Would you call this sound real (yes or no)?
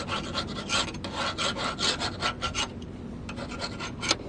yes